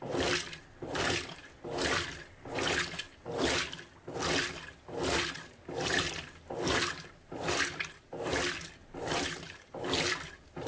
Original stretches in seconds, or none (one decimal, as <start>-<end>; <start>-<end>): 1.4-3.4; 3.9-5.5; 8.3-9.6